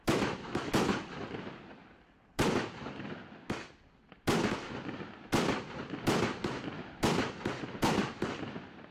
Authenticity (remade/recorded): recorded